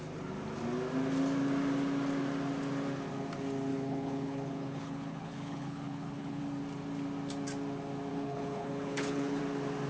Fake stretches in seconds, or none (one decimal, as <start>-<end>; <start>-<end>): 3.7-6.4; 8.1-9.4